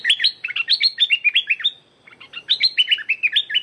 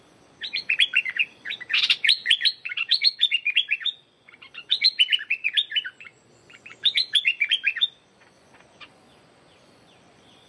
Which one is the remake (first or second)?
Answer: second